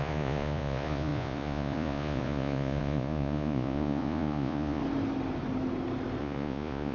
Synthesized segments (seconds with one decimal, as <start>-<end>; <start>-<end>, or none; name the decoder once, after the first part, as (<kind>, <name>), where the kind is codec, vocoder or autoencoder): 0.0-4.8 (vocoder, Vocos); 6.2-6.9